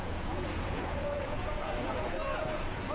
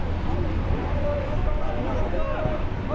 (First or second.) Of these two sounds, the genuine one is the second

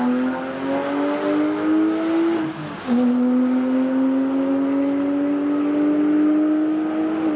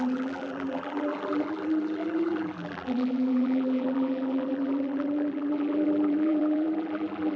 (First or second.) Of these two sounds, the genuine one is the first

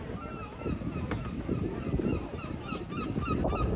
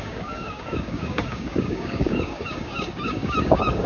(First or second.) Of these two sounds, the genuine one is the first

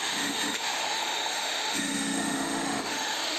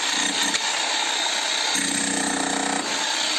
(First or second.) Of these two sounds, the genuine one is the second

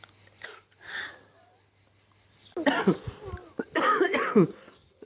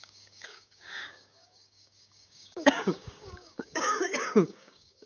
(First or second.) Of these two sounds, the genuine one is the first